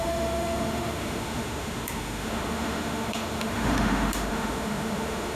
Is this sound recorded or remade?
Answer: remade